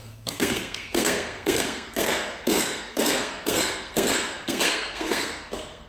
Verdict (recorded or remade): remade